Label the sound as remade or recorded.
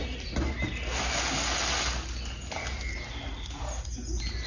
recorded